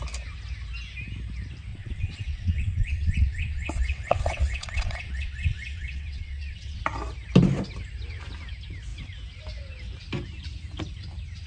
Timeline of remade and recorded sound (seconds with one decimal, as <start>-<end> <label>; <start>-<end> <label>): 0.0-1.7 recorded; 1.7-6.8 remade; 6.8-11.5 recorded